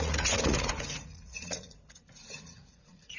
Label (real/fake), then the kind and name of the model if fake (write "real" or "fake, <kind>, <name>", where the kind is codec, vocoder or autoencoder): fake, vocoder, Vocos